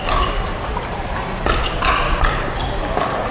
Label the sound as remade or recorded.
recorded